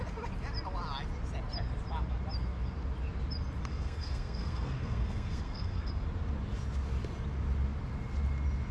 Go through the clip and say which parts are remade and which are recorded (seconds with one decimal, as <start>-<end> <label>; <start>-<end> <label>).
0.0-3.7 recorded; 3.7-5.9 remade; 5.9-8.7 recorded